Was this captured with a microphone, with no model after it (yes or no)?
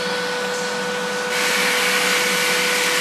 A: yes